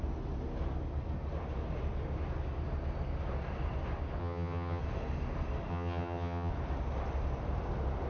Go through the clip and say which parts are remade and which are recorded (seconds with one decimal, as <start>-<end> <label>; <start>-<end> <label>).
0.0-4.2 recorded; 4.2-4.8 remade; 4.8-5.7 recorded; 5.7-6.5 remade; 6.5-8.1 recorded